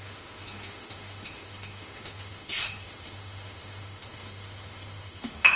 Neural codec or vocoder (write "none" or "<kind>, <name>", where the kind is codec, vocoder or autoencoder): autoencoder, DAC-VAE